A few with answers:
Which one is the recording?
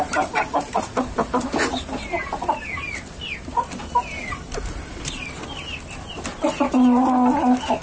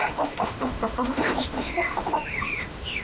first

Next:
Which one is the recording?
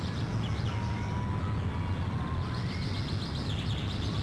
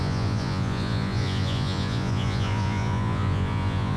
first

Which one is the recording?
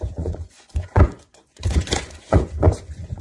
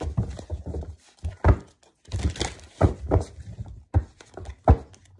second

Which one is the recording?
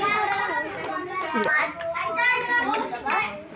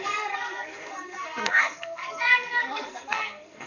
first